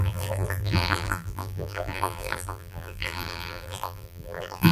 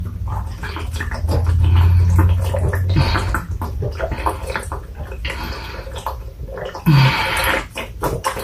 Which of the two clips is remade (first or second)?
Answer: first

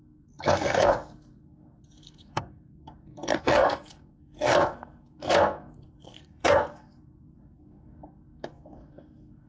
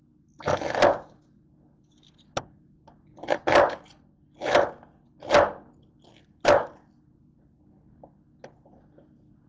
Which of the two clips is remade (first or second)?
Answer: first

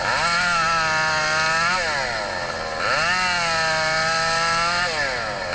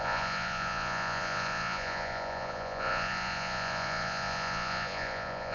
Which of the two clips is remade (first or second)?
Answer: second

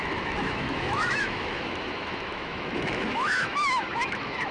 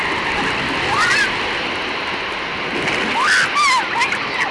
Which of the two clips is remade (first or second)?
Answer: first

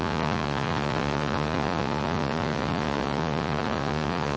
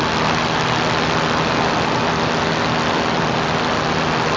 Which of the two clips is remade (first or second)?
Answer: first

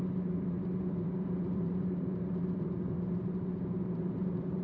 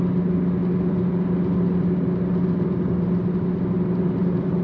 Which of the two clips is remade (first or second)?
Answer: first